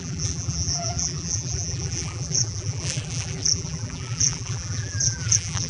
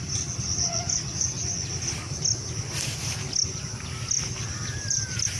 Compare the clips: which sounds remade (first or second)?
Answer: first